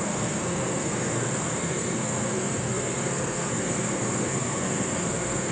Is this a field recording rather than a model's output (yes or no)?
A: no